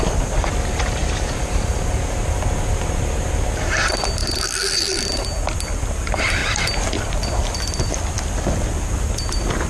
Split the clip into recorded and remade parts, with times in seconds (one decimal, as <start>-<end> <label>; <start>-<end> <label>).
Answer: 0.0-1.0 recorded; 1.0-2.4 remade; 2.4-9.7 recorded

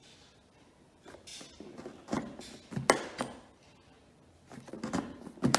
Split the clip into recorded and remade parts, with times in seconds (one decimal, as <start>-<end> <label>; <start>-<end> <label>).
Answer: 0.0-5.6 recorded

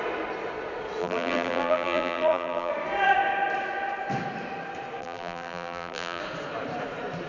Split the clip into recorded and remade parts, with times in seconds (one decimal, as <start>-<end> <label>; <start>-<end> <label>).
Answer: 0.0-1.0 recorded; 1.0-2.7 remade; 2.7-5.0 recorded; 5.0-6.2 remade; 6.2-7.3 recorded

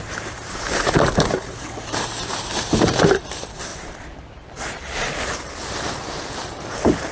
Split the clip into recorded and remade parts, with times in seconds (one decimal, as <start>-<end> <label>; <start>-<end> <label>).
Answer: 0.0-7.1 remade

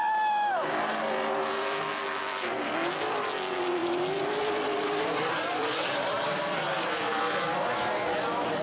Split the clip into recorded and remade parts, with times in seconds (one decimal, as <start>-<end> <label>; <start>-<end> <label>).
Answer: 0.0-3.8 recorded; 3.8-6.6 remade; 6.6-8.6 recorded

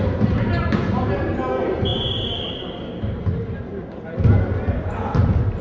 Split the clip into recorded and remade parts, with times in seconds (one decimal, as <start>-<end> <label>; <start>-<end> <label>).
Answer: 0.0-1.9 remade; 1.9-5.6 recorded

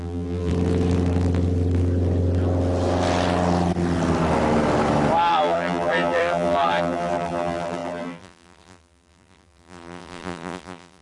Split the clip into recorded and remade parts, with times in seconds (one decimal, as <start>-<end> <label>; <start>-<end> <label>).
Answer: 0.0-0.5 remade; 0.5-5.3 recorded; 5.3-11.0 remade

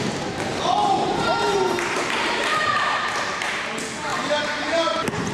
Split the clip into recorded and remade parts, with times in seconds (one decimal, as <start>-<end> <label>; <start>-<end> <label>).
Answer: 0.0-0.5 recorded; 0.5-3.6 remade; 3.6-4.1 recorded; 4.1-5.3 remade